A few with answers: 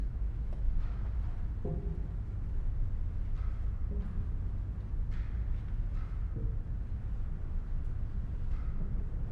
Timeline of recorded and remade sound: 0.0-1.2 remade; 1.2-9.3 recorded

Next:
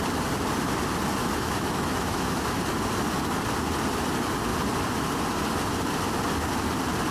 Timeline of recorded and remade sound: 0.0-1.2 recorded; 1.2-2.6 remade; 2.6-7.1 recorded

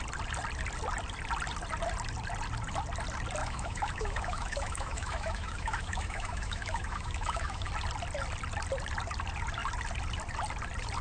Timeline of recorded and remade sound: 0.0-3.4 recorded; 3.4-7.7 remade; 7.7-11.0 recorded

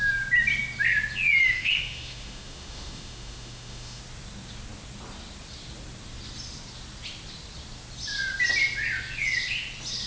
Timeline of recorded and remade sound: 0.0-1.4 recorded; 1.4-4.0 remade; 4.0-10.1 recorded

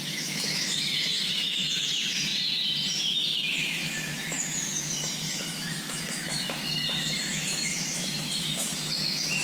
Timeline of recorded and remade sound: 0.0-2.3 remade; 2.3-3.1 recorded; 3.1-9.4 remade